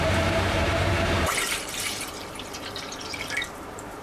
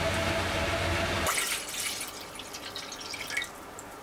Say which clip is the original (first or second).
second